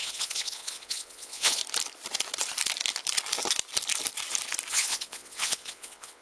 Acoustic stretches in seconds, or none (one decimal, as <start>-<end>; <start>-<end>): 1.6-4.7